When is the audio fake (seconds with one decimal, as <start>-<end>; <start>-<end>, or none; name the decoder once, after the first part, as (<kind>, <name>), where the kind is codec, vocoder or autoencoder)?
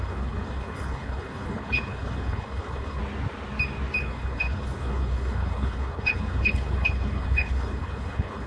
0.0-3.0 (codec, HILCodec); 4.0-8.5